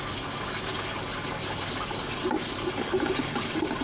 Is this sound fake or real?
real